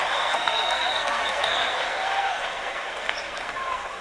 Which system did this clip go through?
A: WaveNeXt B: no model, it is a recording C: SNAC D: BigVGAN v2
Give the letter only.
C